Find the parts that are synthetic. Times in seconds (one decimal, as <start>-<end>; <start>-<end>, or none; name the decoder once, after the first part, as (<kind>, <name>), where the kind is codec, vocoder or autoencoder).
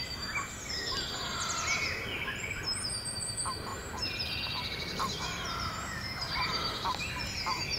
3.7-7.1 (vocoder, BigVGAN v2)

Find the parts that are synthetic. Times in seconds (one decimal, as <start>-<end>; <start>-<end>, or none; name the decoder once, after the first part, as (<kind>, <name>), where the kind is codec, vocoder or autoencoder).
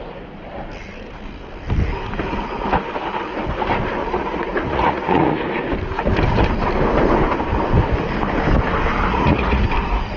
4.0-5.4 (vocoder, Vocos); 9.1-9.6